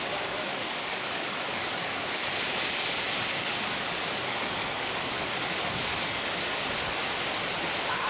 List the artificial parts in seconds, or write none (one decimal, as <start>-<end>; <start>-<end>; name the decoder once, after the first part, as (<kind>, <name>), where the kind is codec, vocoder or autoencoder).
0.0-2.2 (codec, DAC); 3.4-7.0